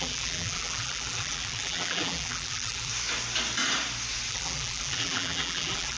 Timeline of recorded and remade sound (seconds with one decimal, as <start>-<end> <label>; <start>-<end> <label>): 0.0-2.9 remade; 2.9-4.3 recorded; 4.3-6.0 remade